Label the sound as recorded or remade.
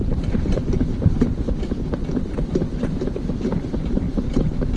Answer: recorded